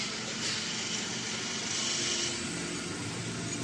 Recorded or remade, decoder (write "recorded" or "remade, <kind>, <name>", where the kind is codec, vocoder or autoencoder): recorded